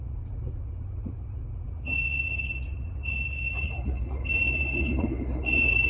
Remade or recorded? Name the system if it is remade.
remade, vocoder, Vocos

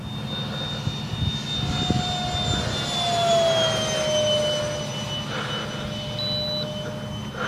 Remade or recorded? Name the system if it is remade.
recorded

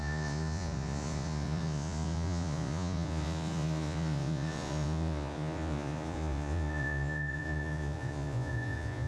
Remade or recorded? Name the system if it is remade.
remade, vocoder, Vocos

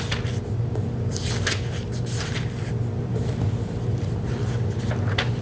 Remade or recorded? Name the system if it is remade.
recorded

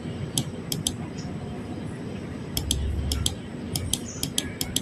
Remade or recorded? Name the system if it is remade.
recorded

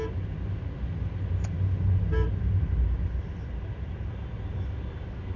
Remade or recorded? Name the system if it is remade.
recorded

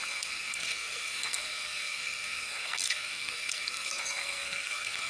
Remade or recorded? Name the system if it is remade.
remade, codec, SNAC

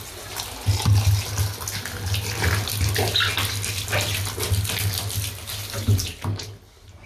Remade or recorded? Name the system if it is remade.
recorded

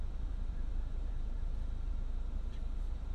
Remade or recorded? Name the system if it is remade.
remade, vocoder, BigVGAN v2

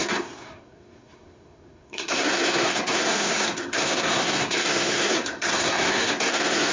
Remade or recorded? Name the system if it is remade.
remade, codec, SNAC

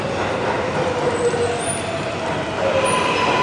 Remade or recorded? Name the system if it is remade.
recorded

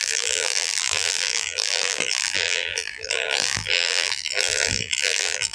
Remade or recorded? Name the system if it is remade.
remade, vocoder, BigVGAN v2